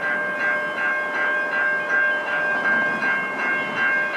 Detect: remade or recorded recorded